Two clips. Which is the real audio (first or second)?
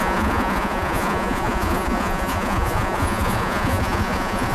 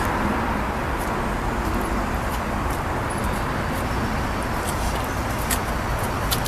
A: second